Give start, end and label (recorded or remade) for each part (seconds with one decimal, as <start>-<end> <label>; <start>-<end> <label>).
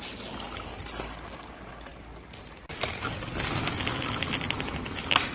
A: 0.0-5.3 recorded